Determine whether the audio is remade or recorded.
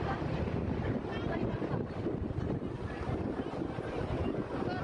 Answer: recorded